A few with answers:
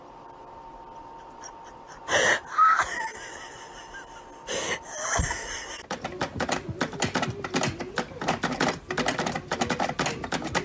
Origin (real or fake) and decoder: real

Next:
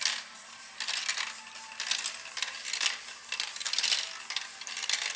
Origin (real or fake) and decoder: real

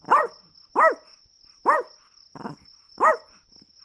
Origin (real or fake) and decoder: real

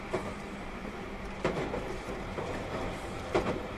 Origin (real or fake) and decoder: fake, vocoder, BigVGAN v2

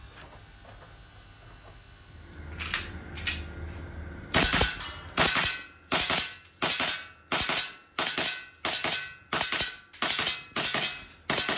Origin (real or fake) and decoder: real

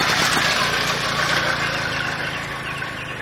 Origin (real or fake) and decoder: real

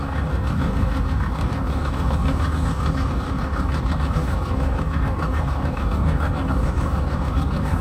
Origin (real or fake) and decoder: fake, codec, DAC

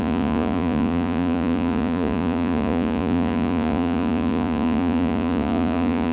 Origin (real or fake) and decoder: fake, vocoder, Vocos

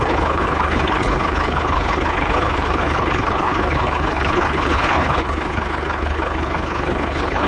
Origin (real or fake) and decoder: fake, codec, HILCodec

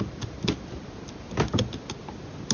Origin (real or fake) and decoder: real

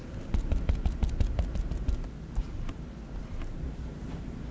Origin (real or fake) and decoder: real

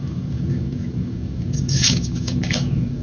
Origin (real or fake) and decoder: fake, codec, DAC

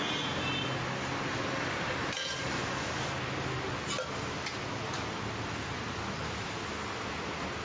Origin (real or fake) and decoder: real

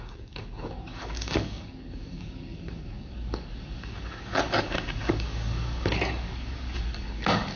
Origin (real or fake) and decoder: fake, codec, DAC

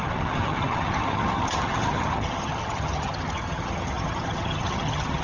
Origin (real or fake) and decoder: fake, vocoder, HiFi-GAN